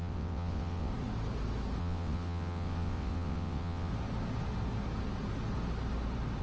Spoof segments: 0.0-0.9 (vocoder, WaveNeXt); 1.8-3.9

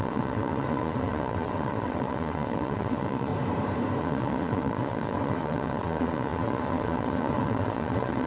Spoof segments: 0.0-3.3 (vocoder, WaveNeXt); 4.0-8.3

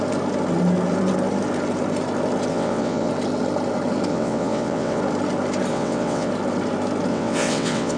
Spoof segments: 2.5-3.1 (vocoder, WaveNeXt); 4.1-5.0; 5.7-6.3; 7.1-8.0

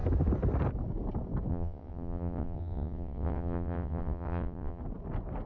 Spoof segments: 1.5-4.8 (vocoder, WaveNeXt)

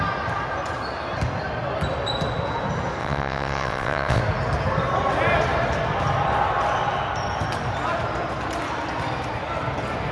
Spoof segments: 3.0-4.2 (vocoder, WaveNeXt)